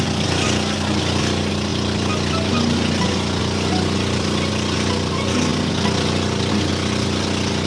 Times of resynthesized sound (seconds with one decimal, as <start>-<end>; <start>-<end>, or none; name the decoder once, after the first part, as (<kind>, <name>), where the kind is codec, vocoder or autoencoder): none